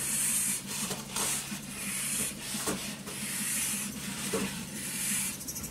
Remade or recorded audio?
remade